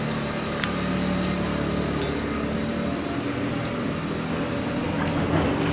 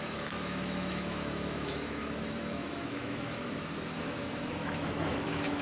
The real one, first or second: first